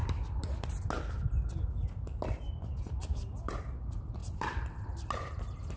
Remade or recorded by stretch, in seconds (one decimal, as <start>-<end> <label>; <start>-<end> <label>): 0.0-4.2 recorded; 4.2-4.8 remade; 4.8-5.8 recorded